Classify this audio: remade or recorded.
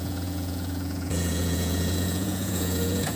remade